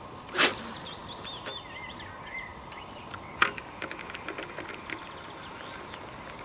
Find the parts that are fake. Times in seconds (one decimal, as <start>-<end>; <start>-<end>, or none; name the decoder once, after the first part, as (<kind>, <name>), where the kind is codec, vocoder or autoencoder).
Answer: none

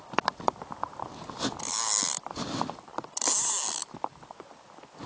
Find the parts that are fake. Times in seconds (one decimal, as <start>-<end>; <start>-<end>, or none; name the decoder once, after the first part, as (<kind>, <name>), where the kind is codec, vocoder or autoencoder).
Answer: none